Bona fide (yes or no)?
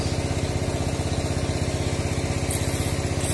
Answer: yes